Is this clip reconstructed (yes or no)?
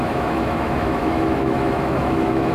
yes